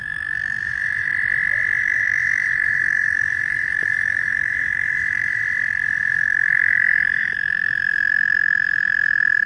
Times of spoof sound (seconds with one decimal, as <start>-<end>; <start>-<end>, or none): 0.0-1.1; 1.8-5.4; 6.0-9.5